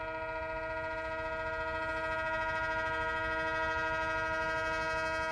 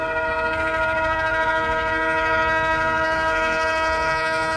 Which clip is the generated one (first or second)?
second